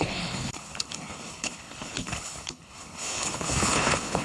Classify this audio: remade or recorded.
remade